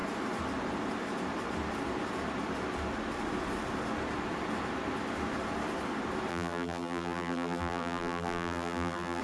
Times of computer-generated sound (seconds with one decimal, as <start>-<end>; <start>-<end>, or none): 6.3-9.2